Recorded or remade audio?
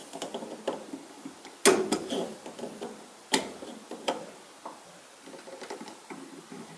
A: recorded